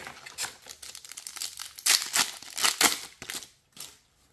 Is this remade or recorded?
recorded